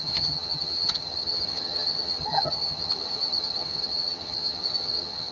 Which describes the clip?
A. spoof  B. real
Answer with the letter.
A